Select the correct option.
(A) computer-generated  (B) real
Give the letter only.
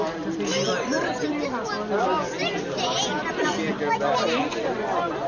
B